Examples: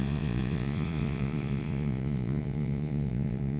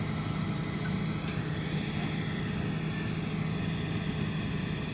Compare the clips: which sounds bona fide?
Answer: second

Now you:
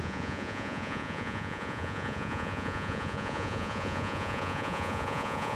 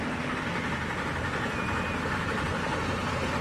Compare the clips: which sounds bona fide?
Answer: second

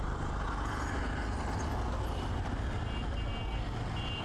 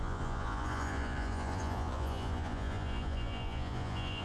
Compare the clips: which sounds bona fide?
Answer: first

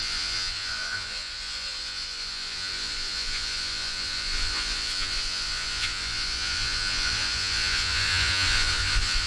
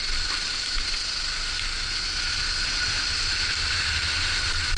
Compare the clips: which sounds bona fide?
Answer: second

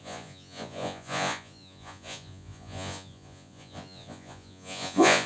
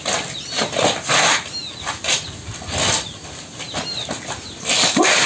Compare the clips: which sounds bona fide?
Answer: second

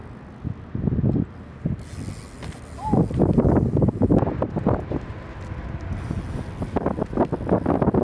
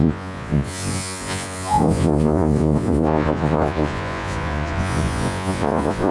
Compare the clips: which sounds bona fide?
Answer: first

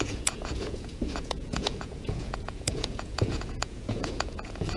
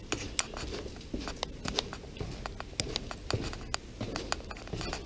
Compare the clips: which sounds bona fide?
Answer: second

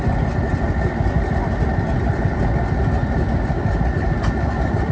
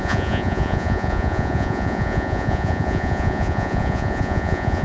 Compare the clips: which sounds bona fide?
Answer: first